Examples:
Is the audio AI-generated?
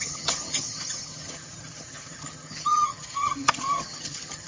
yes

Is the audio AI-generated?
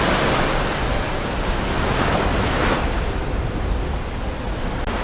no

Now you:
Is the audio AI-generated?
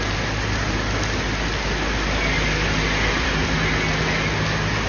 no